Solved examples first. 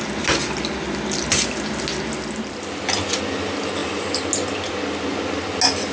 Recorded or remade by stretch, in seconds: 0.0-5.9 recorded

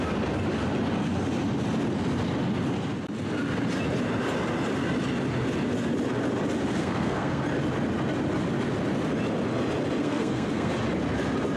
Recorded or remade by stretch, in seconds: 0.0-6.8 recorded; 6.8-7.4 remade; 7.4-10.0 recorded; 10.0-10.7 remade; 10.7-11.6 recorded

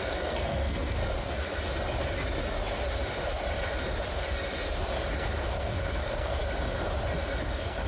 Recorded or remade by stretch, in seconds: 0.0-1.0 remade; 1.0-5.1 recorded; 5.1-6.4 remade; 6.4-7.4 recorded; 7.4-7.9 remade